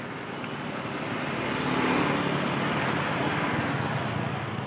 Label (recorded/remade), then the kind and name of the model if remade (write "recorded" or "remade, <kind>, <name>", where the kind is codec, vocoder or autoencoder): recorded